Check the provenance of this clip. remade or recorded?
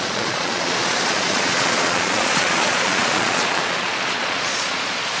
remade